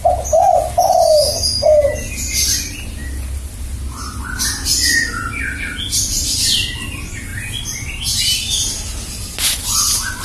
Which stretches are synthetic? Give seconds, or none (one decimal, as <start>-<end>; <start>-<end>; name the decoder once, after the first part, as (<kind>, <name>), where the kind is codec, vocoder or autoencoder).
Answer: none